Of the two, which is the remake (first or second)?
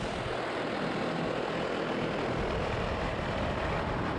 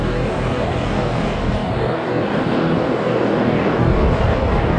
second